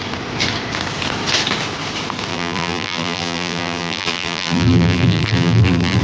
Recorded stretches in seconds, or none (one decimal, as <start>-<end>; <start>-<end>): 0.0-2.3